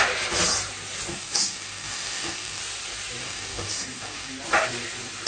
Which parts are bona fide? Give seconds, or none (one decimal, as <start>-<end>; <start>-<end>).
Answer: 0.0-1.1; 2.6-3.2; 4.3-5.3